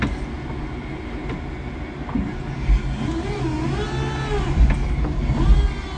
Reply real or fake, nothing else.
real